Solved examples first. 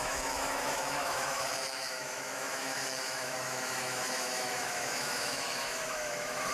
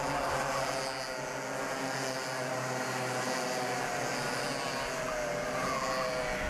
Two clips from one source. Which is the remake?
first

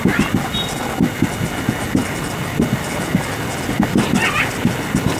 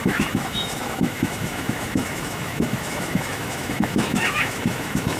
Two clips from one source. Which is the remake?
second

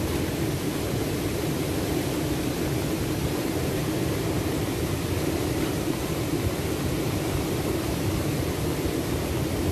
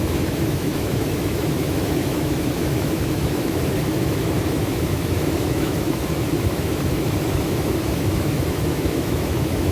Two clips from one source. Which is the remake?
second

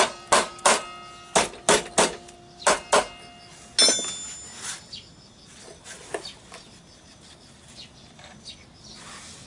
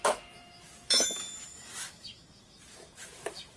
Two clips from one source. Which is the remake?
second